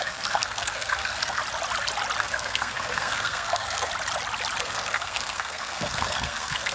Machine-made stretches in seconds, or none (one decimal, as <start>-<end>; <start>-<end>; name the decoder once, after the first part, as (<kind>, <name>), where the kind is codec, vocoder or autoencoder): 0.0-1.4 (codec, SNAC); 2.2-3.9; 4.6-6.7